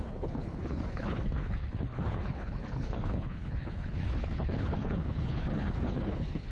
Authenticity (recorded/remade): remade